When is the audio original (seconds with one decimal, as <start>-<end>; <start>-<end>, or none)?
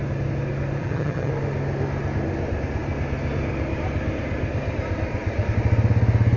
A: 0.0-0.8; 1.3-6.4